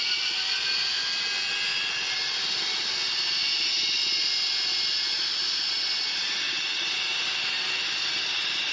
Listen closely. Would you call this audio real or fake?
real